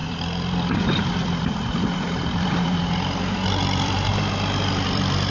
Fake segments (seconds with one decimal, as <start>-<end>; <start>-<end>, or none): 0.0-4.1; 4.8-5.3